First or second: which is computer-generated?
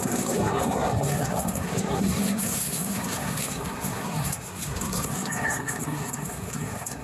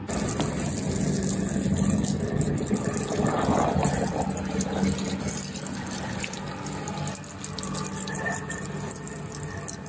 first